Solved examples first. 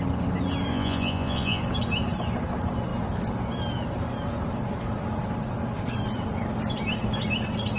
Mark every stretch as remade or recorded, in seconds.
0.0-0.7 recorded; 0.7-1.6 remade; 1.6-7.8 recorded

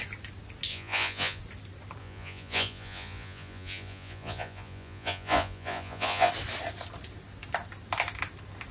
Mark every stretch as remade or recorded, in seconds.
0.0-0.7 recorded; 0.7-1.4 remade; 1.4-2.0 recorded; 2.0-6.3 remade; 6.3-8.7 recorded

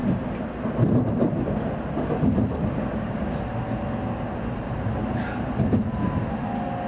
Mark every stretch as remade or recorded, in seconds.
0.0-6.9 recorded

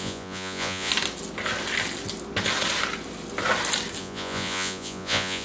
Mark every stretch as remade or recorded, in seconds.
0.0-0.9 remade; 0.9-4.0 recorded; 4.0-5.4 remade